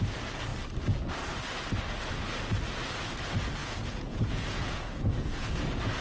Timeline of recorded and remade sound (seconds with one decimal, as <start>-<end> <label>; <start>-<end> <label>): 0.0-3.6 recorded; 3.6-5.5 remade; 5.5-6.0 recorded